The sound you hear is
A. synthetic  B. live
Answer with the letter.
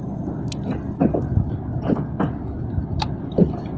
B